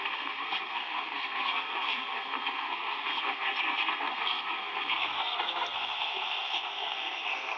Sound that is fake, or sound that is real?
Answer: fake